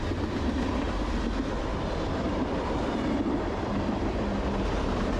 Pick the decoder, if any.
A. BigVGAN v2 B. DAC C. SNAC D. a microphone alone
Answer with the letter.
D